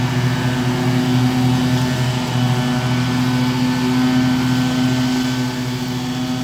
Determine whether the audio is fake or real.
real